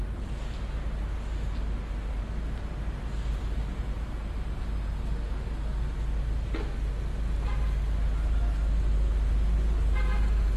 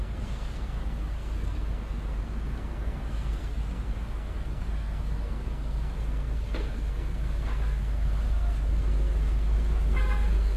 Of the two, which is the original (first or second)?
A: first